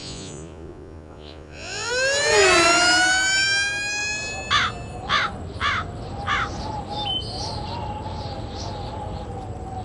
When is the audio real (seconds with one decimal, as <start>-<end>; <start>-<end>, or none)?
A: 1.9-9.8